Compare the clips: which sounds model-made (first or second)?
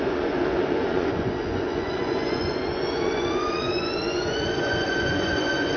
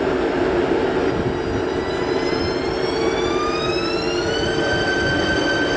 first